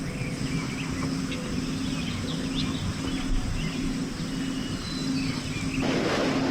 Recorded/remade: recorded